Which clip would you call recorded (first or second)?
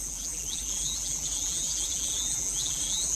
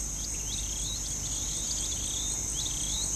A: second